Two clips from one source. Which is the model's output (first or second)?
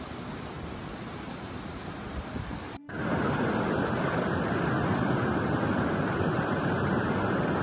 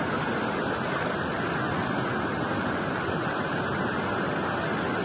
first